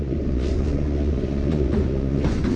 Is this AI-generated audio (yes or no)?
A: yes